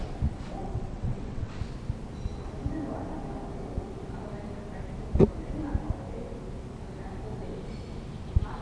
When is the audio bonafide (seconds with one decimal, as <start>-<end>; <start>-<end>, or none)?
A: 0.0-0.6; 1.6-8.6